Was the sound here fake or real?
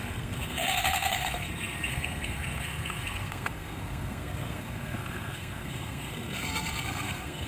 fake